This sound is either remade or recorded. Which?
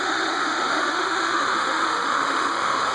remade